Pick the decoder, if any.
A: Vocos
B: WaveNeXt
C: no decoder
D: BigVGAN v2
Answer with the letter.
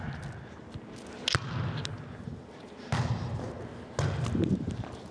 C